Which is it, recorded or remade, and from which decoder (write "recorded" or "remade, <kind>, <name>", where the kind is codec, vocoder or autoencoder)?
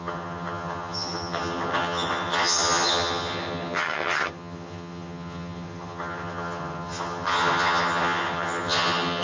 remade, vocoder, HiFi-GAN